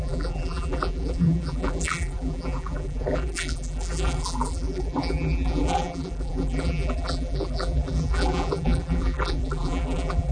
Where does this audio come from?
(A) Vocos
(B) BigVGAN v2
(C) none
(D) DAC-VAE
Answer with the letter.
B